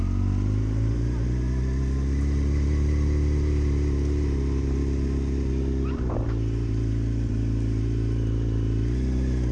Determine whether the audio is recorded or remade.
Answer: recorded